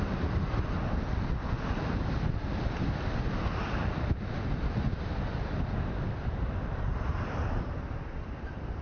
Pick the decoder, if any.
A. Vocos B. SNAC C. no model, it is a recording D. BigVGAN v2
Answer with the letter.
C